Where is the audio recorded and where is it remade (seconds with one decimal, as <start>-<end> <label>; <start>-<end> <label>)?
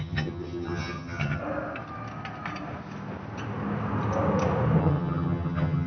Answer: 0.0-1.4 remade; 1.4-4.8 recorded; 4.8-5.9 remade